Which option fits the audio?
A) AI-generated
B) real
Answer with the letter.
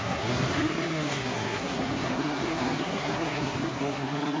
A